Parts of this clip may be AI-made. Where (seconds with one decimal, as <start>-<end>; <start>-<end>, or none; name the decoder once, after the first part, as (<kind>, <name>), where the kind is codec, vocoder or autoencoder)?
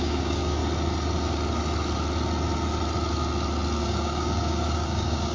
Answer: 0.0-0.6 (codec, DAC); 3.8-5.3